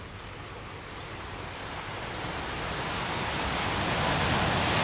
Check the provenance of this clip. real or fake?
real